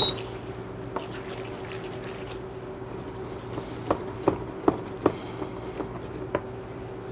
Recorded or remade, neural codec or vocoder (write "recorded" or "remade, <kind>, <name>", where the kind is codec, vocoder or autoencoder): recorded